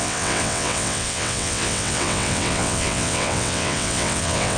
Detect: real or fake fake